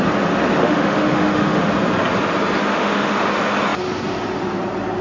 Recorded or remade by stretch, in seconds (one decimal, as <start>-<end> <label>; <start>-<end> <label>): 0.0-0.6 recorded; 0.6-1.7 remade; 1.7-2.7 recorded; 2.7-3.3 remade; 3.3-5.0 recorded